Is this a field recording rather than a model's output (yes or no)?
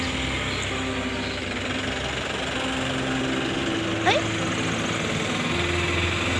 yes